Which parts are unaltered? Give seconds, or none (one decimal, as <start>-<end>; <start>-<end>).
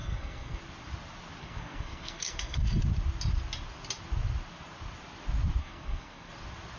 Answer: 0.6-1.4; 2.8-5.6; 6.3-6.8